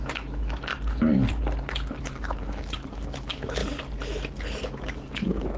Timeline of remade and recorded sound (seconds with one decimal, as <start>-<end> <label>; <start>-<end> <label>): 0.0-0.7 remade; 0.7-2.0 recorded; 2.0-3.6 remade; 3.6-4.6 recorded; 4.6-5.6 remade